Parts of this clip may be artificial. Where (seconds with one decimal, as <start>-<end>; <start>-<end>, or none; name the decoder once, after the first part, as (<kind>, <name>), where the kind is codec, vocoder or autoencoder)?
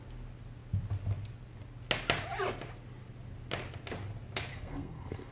4.5-5.3 (codec, SNAC)